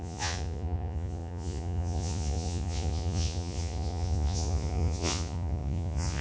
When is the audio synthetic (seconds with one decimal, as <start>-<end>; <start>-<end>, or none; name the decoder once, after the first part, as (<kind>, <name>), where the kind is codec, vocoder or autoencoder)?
0.0-6.2 (vocoder, Vocos)